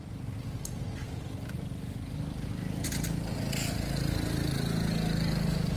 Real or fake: real